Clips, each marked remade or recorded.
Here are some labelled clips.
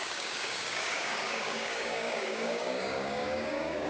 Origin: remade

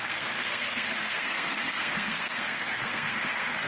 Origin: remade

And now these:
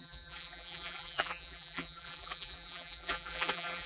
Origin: remade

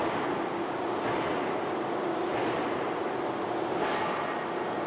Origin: recorded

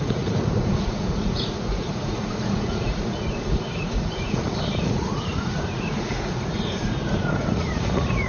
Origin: remade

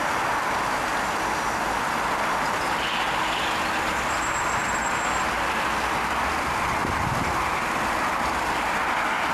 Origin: recorded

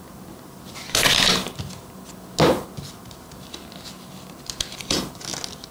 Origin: recorded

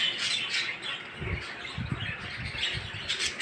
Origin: recorded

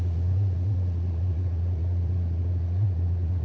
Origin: remade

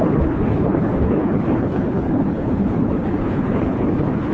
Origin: remade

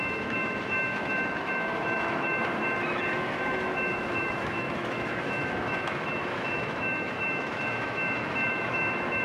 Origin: remade